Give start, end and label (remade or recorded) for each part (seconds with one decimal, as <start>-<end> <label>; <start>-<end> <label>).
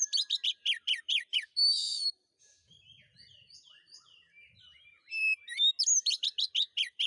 0.0-5.4 remade; 5.4-6.0 recorded; 6.0-7.1 remade